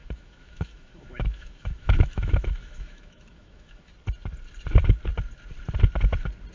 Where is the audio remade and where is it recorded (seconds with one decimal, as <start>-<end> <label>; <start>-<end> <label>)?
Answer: 0.0-3.9 remade; 3.9-6.5 recorded